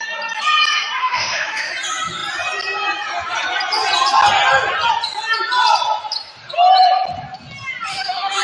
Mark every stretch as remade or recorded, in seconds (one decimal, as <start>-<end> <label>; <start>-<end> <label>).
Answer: 0.0-1.0 recorded; 1.0-1.7 remade; 1.7-7.9 recorded; 7.9-8.4 remade